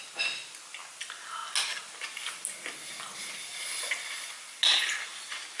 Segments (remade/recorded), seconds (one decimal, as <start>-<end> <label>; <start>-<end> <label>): 0.0-5.6 recorded